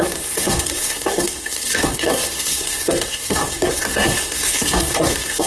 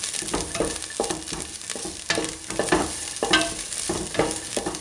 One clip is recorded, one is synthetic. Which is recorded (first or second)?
second